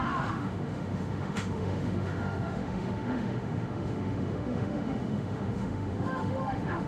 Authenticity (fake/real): fake